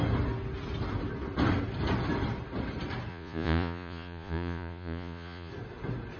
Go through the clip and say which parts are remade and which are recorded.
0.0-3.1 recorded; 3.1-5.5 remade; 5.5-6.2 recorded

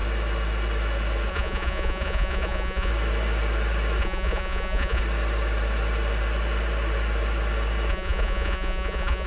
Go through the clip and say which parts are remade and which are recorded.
0.0-1.3 recorded; 1.3-2.9 remade; 2.9-4.0 recorded; 4.0-5.0 remade; 5.0-7.9 recorded; 7.9-9.3 remade

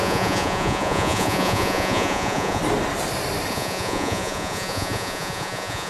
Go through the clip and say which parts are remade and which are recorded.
0.0-2.6 remade; 2.6-3.5 recorded; 3.5-5.9 remade

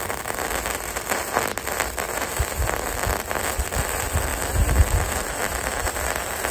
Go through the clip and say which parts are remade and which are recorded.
0.0-6.5 recorded

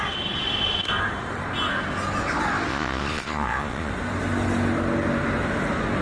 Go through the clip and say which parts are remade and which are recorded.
0.0-2.7 recorded; 2.7-3.9 remade; 3.9-6.0 recorded